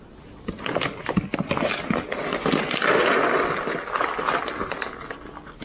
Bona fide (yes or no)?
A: yes